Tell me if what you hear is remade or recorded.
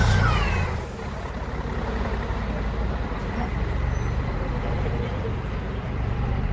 recorded